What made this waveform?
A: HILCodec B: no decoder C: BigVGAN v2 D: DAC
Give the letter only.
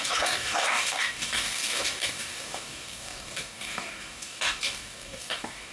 D